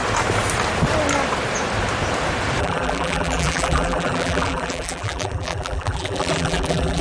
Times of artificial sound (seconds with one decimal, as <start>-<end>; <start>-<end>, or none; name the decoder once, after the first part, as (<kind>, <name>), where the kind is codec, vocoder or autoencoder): 2.6-7.0 (vocoder, BigVGAN v2)